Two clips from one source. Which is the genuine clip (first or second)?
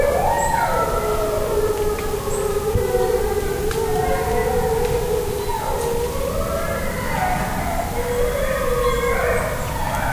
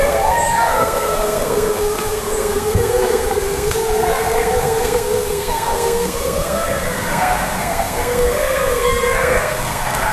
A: first